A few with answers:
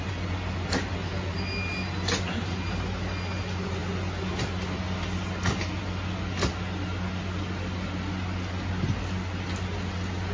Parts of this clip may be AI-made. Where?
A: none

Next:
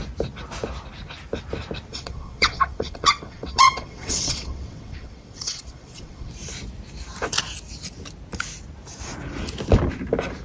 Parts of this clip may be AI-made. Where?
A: 1.9-6.3 (vocoder, WaveNeXt)